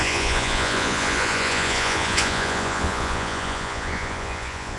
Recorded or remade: remade